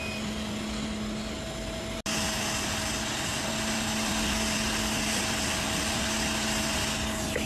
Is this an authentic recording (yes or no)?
yes